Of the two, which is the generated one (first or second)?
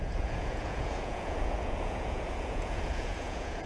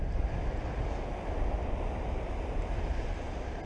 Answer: first